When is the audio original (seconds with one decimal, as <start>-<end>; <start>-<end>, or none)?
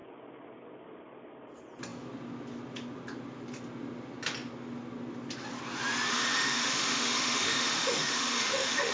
0.0-6.1